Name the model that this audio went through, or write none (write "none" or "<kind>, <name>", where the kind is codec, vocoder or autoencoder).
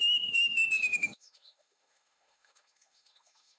autoencoder, DAC-VAE